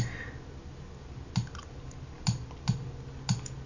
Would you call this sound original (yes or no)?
yes